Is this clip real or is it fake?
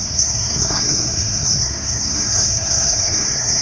fake